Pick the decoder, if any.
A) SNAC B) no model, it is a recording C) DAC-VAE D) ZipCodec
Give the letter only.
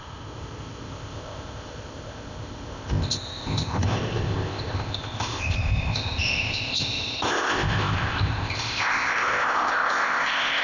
D